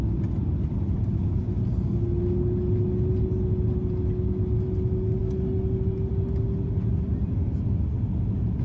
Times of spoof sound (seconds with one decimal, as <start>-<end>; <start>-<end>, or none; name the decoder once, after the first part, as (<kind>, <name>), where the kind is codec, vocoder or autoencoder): none